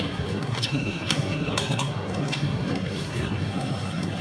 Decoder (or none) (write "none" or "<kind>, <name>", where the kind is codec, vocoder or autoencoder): codec, SNAC